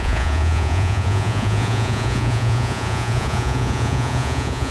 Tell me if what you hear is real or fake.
fake